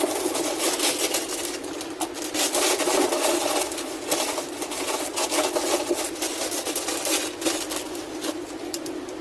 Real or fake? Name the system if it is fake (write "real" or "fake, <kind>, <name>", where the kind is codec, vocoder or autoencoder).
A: real